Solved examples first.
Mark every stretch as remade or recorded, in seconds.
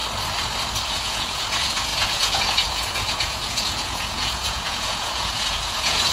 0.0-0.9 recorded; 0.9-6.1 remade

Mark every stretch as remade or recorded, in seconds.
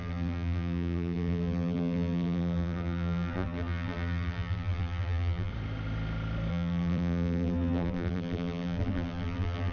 0.0-5.5 remade; 5.5-6.5 recorded; 6.5-9.7 remade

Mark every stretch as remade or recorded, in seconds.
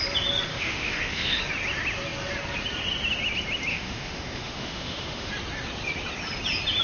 0.0-0.5 recorded; 0.5-1.4 remade; 1.4-3.7 recorded; 3.7-5.3 remade; 5.3-6.8 recorded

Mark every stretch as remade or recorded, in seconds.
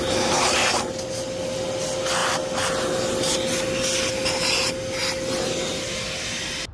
0.0-6.7 recorded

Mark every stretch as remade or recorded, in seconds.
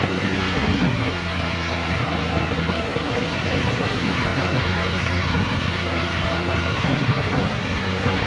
0.0-8.3 remade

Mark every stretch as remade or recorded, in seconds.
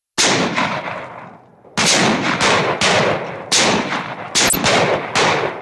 0.0-5.6 recorded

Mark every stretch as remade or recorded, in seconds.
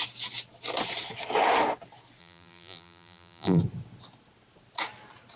0.0-2.2 recorded; 2.2-3.6 remade; 3.6-5.4 recorded